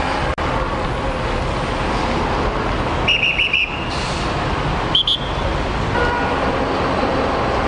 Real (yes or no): yes